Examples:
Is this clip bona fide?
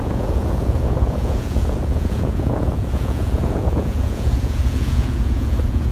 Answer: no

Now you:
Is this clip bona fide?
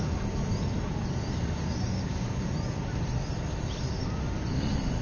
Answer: yes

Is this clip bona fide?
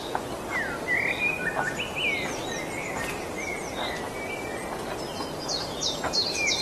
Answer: yes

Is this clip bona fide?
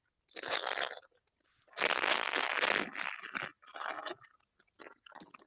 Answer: yes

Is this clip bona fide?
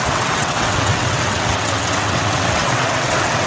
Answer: no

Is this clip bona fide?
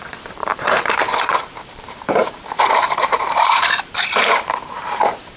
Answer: no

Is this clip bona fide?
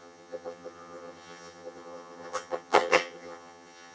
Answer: no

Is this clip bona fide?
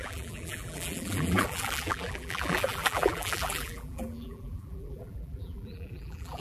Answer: no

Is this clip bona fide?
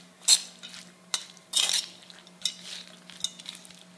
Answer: yes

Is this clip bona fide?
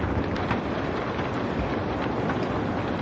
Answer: yes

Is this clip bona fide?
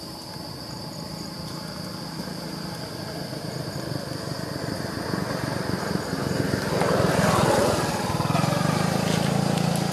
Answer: yes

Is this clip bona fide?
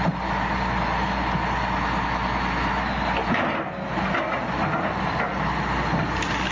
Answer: yes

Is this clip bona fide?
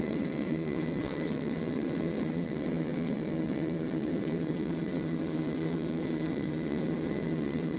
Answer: no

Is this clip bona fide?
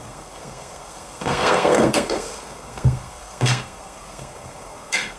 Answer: no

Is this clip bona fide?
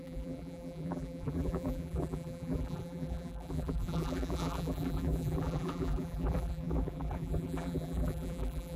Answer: no